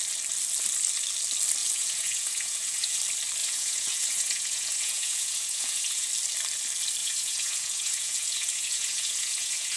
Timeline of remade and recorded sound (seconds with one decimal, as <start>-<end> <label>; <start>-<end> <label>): 0.0-1.6 recorded; 1.6-3.0 remade; 3.0-3.4 recorded; 3.4-6.1 remade; 6.1-7.0 recorded; 7.0-9.8 remade